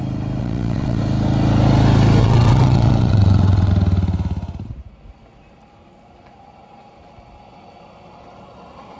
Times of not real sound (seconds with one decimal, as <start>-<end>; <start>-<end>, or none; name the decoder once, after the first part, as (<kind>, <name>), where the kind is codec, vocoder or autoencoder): 0.4-1.0 (vocoder, WaveNeXt); 2.2-3.7